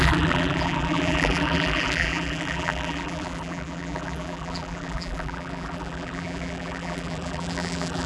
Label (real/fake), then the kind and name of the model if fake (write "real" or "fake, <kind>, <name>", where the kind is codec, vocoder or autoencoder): fake, vocoder, BigVGAN v2